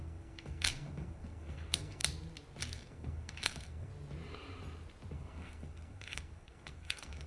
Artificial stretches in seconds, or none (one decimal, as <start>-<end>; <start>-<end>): 0.0-2.0; 2.6-3.9; 5.1-7.3